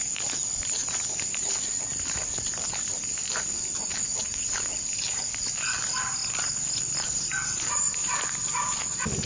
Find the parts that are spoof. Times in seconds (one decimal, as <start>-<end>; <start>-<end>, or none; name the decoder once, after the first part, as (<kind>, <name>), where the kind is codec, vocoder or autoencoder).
none